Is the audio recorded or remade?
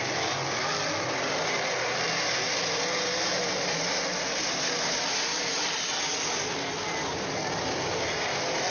recorded